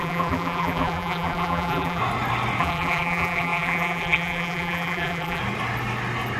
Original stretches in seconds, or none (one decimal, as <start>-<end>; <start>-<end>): 2.0-2.6; 5.4-6.4